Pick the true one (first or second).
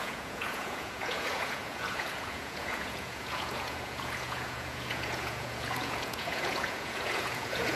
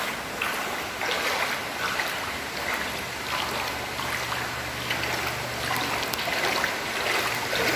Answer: second